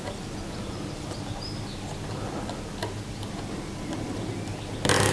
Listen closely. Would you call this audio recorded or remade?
recorded